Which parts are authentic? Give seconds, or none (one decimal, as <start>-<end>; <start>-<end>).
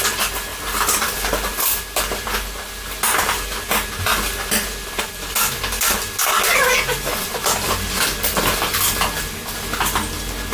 0.0-0.5; 2.0-10.5